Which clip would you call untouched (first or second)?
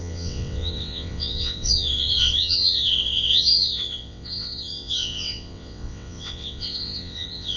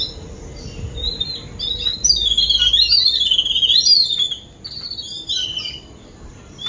second